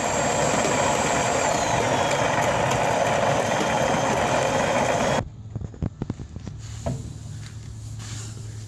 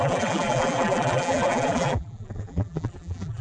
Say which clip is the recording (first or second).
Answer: first